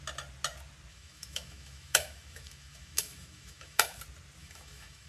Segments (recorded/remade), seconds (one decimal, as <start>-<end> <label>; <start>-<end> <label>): 0.0-0.9 recorded; 0.9-4.0 remade; 4.0-4.4 recorded; 4.4-5.1 remade